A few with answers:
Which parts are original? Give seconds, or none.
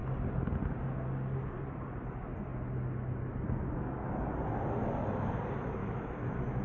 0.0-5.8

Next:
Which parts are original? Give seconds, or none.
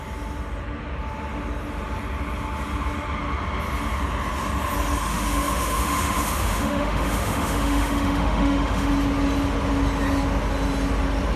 0.0-5.1; 8.9-11.4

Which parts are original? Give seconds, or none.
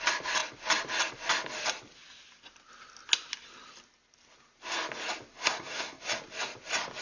0.0-5.3; 6.0-7.0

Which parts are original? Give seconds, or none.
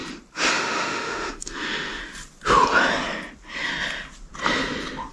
0.0-0.5; 2.0-5.1